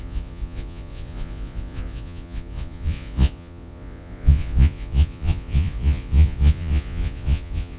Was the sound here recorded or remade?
remade